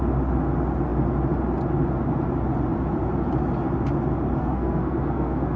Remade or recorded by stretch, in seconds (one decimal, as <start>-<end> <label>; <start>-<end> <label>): 0.0-4.4 recorded; 4.4-5.6 remade